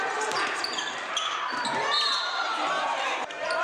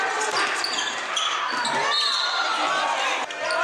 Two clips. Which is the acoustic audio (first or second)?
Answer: second